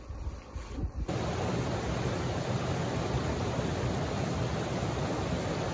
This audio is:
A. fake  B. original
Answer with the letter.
B